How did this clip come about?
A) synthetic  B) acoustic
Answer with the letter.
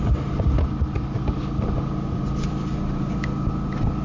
B